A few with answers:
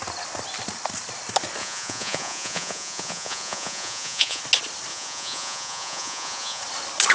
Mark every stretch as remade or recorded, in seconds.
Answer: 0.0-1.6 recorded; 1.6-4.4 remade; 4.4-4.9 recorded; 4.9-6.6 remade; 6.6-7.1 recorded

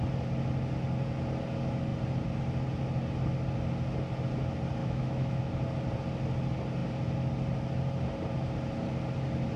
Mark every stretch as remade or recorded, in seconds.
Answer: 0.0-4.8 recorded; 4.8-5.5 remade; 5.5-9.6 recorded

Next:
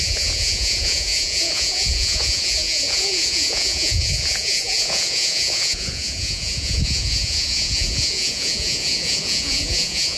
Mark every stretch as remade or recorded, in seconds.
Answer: 0.0-10.2 remade

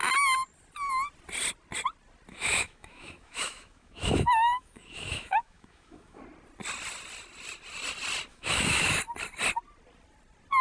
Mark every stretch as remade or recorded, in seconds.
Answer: 0.0-2.3 recorded; 2.3-6.2 remade; 6.2-8.3 recorded; 8.3-9.0 remade; 9.0-10.6 recorded